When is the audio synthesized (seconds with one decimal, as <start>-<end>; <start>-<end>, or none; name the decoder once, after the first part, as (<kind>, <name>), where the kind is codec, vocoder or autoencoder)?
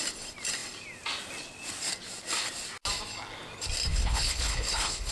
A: 3.9-5.1 (codec, HILCodec)